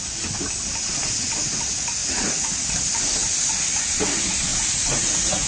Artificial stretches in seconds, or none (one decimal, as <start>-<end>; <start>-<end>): 2.0-2.7; 4.5-5.5

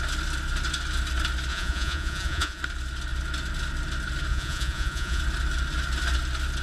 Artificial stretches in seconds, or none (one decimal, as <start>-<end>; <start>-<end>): 1.5-2.6; 4.3-5.2

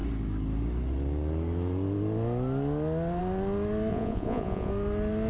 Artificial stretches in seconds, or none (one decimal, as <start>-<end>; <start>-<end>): 3.9-4.7